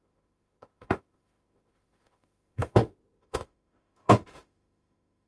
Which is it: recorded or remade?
remade